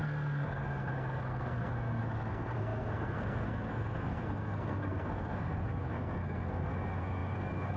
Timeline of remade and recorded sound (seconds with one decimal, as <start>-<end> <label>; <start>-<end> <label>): 0.0-7.8 remade